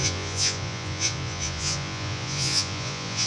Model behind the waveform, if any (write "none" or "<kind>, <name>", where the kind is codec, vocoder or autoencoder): vocoder, Vocos